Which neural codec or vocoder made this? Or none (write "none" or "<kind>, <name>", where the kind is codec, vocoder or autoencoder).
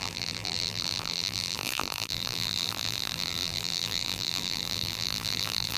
vocoder, BigVGAN v2